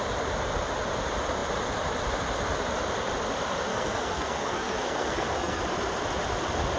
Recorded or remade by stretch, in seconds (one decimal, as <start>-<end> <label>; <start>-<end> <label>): 0.0-3.7 recorded; 3.7-5.6 remade; 5.6-6.8 recorded